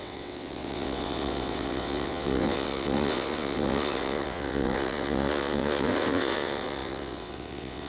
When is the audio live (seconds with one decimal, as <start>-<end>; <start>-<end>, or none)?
none